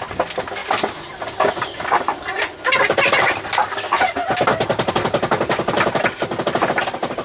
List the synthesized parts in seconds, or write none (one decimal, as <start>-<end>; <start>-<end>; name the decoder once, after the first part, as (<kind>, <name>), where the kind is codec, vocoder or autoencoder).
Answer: none